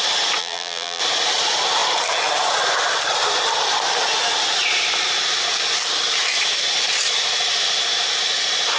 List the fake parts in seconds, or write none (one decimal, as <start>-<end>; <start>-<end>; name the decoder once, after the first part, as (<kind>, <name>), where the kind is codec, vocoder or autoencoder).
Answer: 0.4-1.0 (vocoder, BigVGAN v2)